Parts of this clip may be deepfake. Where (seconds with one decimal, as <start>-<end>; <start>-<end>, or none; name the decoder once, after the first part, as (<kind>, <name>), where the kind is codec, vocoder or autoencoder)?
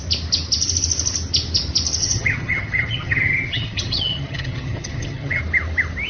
2.0-5.4 (vocoder, HiFi-GAN)